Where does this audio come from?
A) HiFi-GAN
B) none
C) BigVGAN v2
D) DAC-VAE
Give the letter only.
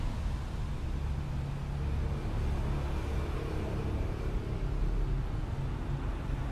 B